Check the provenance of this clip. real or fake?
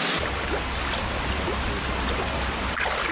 real